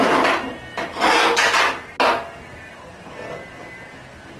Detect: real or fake real